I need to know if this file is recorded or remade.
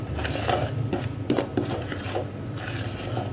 recorded